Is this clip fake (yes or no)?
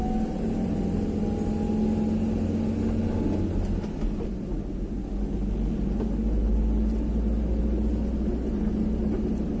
no